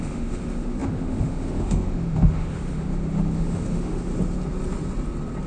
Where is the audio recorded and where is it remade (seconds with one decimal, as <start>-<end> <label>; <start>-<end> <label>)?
0.0-4.1 remade; 4.1-5.5 recorded